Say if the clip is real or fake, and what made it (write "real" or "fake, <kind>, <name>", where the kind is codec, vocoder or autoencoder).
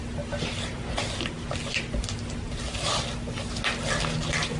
real